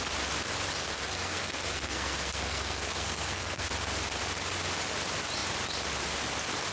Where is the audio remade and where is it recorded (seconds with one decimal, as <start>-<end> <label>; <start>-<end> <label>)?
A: 0.0-0.8 recorded; 0.8-3.7 remade; 3.7-6.7 recorded